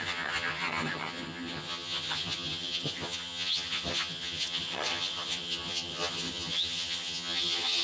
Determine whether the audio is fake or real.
fake